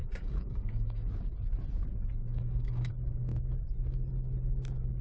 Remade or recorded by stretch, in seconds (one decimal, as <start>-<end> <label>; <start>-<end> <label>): 0.0-1.1 remade; 1.1-2.2 recorded; 2.2-2.9 remade; 2.9-5.0 recorded